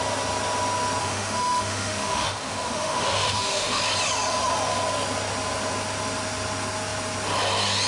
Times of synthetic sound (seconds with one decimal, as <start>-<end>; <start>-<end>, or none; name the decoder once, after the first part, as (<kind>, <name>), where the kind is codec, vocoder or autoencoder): 1.0-3.8 (autoencoder, DAC-VAE)